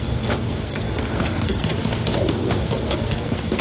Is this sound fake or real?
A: fake